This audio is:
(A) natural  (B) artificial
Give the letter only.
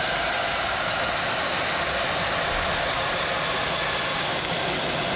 A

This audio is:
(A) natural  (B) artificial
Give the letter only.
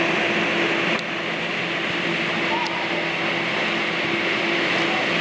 A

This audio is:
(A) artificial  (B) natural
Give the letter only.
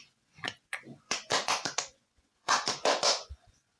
A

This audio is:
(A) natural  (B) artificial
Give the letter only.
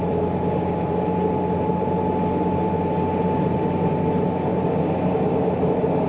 A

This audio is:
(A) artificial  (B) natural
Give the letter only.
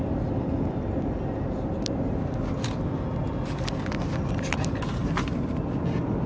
B